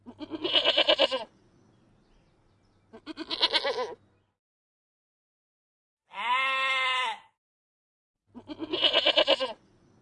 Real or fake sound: real